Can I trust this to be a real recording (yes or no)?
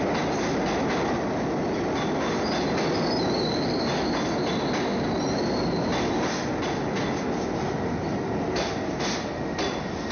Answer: yes